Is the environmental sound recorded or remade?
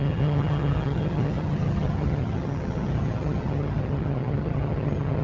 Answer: remade